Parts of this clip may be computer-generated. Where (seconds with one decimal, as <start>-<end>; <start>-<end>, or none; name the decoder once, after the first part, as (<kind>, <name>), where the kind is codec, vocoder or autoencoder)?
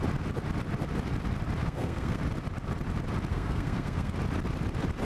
1.6-2.2 (codec, SNAC); 3.3-4.1